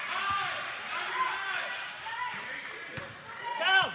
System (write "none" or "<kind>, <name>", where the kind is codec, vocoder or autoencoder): none